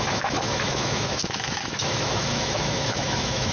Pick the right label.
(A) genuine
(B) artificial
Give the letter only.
B